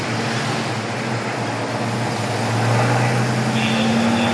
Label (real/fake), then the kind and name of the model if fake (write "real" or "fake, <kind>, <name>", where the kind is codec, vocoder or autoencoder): real